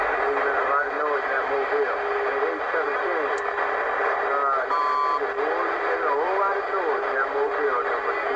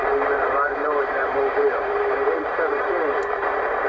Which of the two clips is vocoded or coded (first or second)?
second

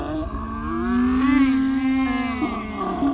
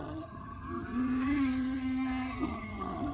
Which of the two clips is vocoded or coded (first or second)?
second